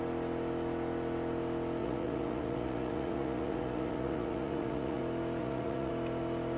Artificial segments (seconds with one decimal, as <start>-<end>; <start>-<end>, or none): 1.8-5.0; 5.4-5.9